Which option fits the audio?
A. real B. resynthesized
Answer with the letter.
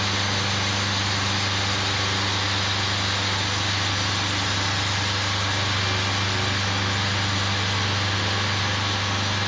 A